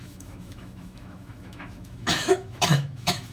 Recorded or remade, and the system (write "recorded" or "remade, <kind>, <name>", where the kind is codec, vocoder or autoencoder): remade, autoencoder, DAC-VAE